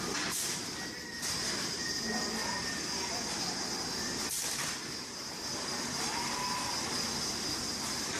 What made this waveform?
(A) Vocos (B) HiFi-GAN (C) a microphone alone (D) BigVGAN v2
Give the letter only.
C